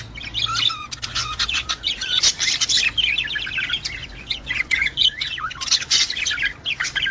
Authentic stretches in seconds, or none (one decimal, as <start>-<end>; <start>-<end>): 0.0-0.7; 2.2-4.0; 6.3-7.1